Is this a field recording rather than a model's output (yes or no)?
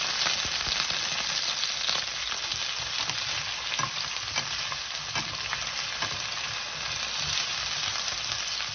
yes